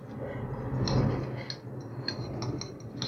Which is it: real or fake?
real